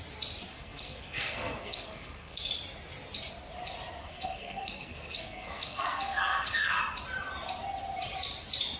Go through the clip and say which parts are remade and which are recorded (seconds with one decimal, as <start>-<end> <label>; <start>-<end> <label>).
0.0-0.5 recorded; 0.5-2.5 remade; 2.5-4.0 recorded; 4.0-6.8 remade; 6.8-8.8 recorded